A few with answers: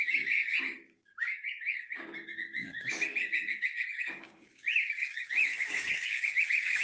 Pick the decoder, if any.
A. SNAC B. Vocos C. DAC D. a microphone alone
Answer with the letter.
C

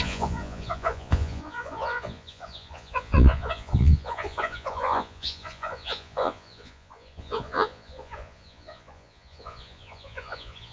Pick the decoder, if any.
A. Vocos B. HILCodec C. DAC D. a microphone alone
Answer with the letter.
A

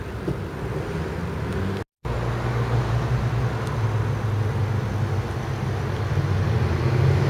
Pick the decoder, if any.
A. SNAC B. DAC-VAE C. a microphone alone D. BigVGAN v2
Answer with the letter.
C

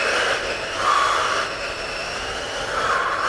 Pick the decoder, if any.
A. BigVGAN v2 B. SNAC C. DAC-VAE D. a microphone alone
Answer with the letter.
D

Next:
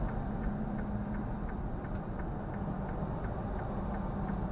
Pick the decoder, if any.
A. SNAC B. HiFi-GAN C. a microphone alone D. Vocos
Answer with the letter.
C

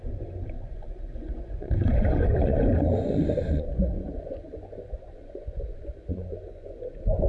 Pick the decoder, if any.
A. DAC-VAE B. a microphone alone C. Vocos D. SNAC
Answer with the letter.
C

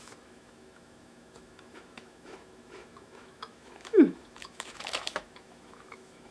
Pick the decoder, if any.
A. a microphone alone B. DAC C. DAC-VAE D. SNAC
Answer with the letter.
C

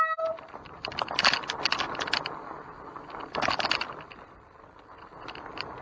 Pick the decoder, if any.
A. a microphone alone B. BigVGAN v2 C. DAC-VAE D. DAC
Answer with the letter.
A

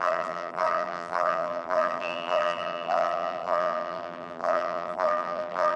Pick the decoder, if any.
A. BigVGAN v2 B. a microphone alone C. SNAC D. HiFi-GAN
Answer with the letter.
A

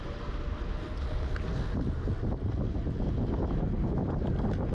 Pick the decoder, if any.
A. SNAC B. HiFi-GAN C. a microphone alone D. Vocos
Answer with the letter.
C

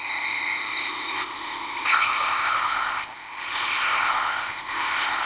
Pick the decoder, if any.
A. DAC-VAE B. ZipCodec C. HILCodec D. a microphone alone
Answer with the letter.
B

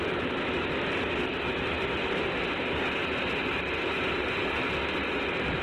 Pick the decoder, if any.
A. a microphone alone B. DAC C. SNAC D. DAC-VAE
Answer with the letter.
A